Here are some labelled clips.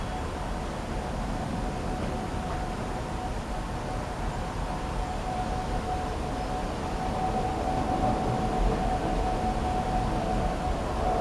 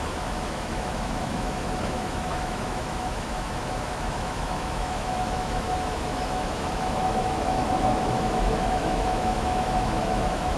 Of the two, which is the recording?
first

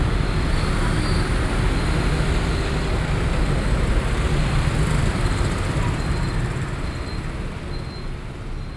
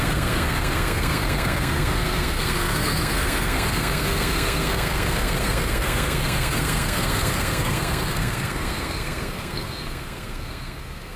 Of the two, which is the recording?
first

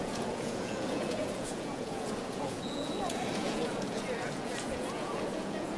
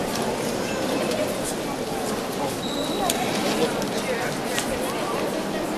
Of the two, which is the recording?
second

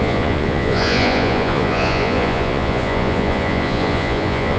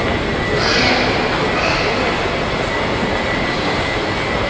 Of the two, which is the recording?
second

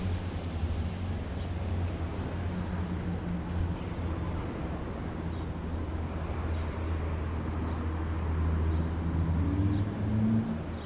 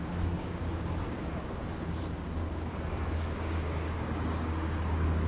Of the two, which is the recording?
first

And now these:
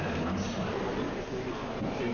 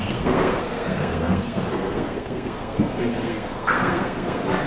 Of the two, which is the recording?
first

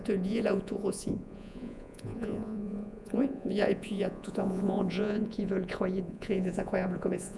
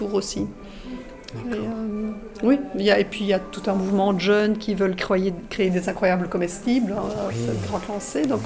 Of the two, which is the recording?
second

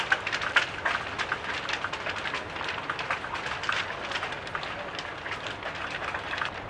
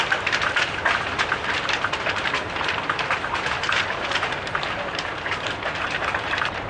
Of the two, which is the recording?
first